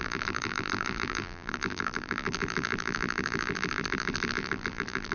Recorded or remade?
remade